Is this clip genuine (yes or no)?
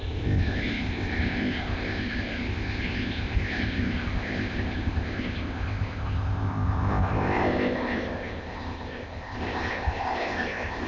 no